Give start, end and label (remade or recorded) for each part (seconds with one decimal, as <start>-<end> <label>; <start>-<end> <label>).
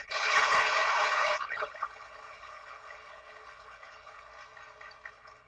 0.0-4.3 remade; 4.3-5.1 recorded; 5.1-5.5 remade